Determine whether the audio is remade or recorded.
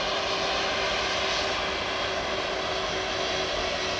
recorded